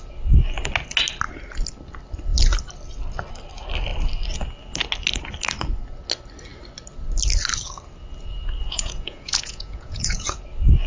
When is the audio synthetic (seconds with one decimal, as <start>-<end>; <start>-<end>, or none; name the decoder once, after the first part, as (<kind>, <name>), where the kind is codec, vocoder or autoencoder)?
8.6-10.4 (vocoder, Vocos)